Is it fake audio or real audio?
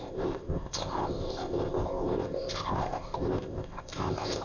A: fake